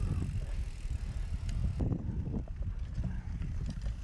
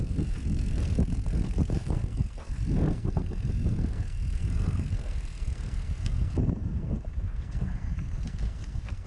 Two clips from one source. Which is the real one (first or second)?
first